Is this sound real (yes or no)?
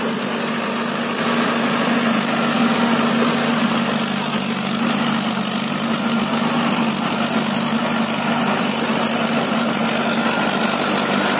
yes